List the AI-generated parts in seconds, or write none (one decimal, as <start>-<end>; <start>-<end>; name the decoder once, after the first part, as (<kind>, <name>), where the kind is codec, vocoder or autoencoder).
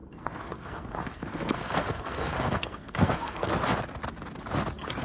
0.0-3.5 (codec, SNAC)